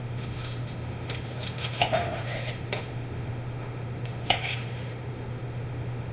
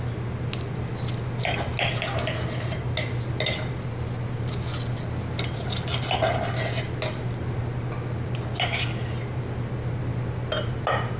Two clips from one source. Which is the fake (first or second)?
first